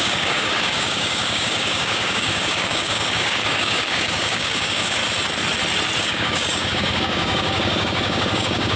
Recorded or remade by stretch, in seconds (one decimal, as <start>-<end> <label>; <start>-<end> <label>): 0.0-5.0 remade; 5.0-6.0 recorded; 6.0-8.8 remade